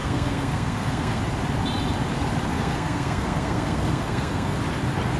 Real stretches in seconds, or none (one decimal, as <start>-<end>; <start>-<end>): 1.2-2.5; 4.6-5.2